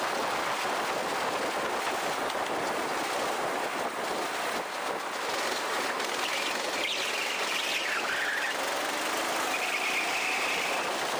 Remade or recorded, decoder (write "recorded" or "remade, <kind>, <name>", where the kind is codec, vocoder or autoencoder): recorded